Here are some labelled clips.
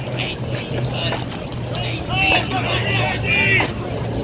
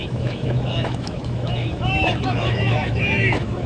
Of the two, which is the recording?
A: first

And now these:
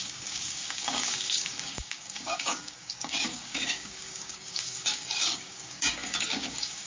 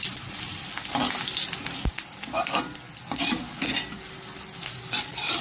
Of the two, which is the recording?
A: second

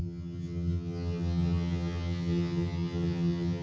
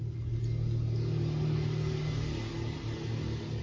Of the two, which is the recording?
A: second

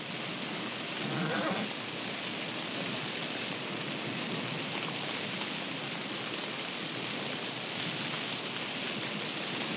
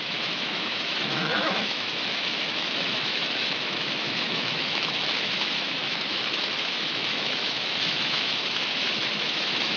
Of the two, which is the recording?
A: first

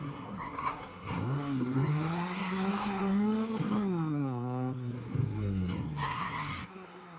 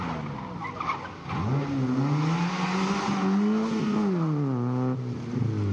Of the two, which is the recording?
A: second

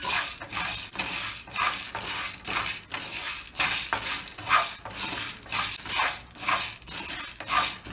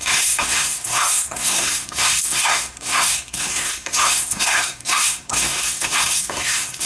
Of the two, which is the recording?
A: first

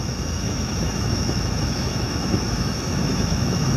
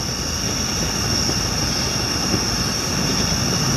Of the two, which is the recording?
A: second